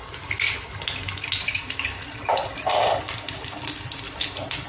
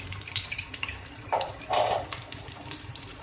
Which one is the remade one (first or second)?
second